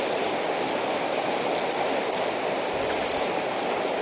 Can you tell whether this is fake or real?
real